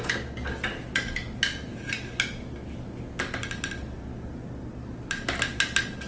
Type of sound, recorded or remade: recorded